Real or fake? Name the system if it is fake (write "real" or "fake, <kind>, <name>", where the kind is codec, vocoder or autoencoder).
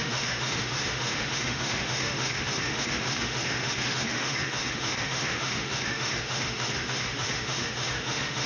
fake, autoencoder, DAC-VAE